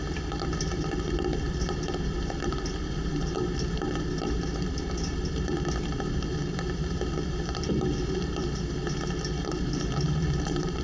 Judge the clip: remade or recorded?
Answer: remade